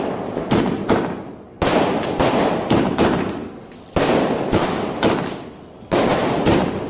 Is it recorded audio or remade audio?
recorded